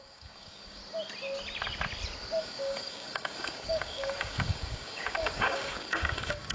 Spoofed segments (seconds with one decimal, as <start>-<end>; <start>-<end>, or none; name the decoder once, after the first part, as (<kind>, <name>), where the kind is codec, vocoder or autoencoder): 0.0-0.8 (codec, DAC); 2.4-6.5